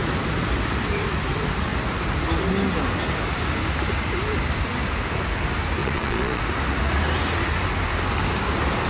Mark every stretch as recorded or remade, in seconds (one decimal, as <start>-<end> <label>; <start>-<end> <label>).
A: 0.0-5.8 recorded; 5.8-6.4 remade; 6.4-8.9 recorded